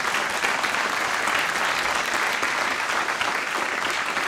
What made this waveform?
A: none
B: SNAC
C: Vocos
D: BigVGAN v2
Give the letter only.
A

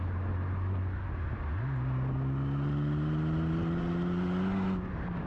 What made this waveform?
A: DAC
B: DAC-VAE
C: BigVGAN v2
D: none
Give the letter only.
D